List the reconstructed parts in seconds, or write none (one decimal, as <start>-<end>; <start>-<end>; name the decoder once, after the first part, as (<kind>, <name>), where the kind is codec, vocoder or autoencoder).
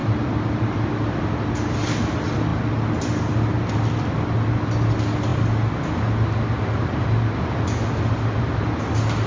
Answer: 0.0-0.9 (vocoder, BigVGAN v2)